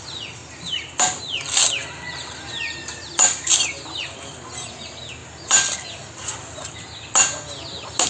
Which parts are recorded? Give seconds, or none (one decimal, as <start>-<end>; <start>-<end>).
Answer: 0.0-0.4; 1.2-1.8; 4.3-5.2; 6.7-8.1